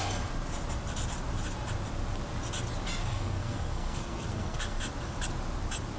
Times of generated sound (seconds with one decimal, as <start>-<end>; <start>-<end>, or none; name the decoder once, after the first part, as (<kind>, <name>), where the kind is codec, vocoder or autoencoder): 3.0-4.8 (codec, SNAC)